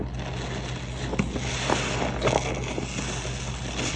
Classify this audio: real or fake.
real